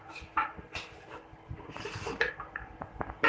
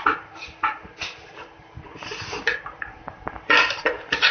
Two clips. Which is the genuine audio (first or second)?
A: first